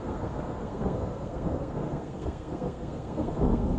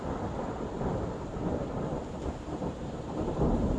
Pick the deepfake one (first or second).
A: first